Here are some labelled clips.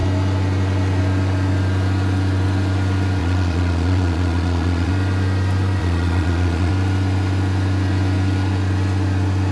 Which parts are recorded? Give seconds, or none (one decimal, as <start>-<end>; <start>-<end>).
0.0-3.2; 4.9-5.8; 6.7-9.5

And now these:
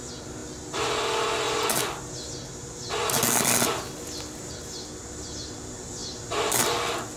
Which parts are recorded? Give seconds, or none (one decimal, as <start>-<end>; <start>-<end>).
0.0-7.2

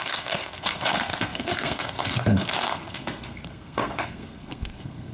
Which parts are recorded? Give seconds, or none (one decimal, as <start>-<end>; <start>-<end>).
none

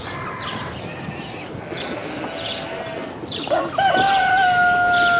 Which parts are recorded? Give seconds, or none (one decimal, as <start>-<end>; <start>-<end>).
0.0-5.2

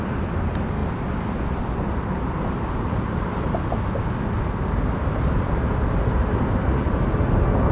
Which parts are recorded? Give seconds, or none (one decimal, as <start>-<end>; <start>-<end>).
0.0-7.7